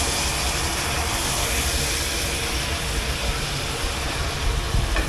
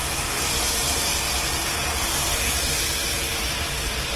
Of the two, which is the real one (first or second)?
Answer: second